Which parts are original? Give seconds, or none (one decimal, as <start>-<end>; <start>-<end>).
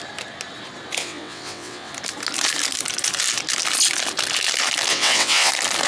0.0-1.0; 1.9-4.9; 5.5-5.9